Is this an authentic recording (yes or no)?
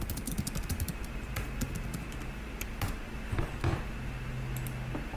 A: yes